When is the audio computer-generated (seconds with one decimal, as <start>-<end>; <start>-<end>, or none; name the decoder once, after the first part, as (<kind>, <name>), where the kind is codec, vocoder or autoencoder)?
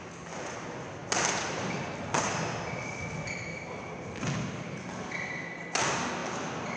none